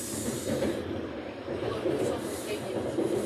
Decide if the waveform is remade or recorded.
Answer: remade